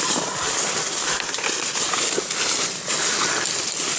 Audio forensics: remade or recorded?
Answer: recorded